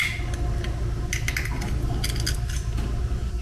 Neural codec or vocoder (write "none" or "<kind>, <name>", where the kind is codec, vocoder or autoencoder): none